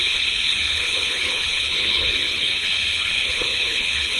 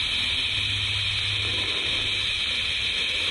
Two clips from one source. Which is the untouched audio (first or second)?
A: second